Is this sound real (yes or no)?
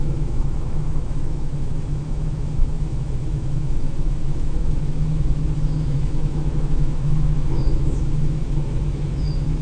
no